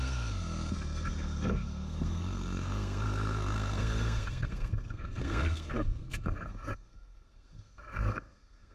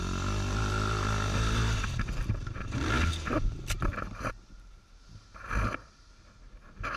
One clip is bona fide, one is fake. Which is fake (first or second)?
first